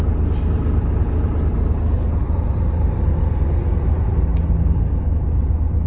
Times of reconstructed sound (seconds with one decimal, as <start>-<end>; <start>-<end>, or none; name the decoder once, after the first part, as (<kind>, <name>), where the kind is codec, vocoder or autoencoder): 2.2-3.3 (vocoder, BigVGAN v2); 4.3-5.0